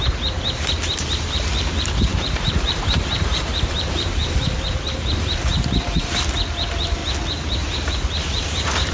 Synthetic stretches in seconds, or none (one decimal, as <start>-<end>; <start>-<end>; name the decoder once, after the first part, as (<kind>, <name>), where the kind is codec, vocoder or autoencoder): 2.1-6.1 (vocoder, BigVGAN v2)